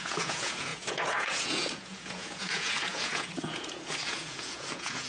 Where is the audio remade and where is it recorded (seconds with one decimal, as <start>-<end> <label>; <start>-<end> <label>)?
0.0-5.1 remade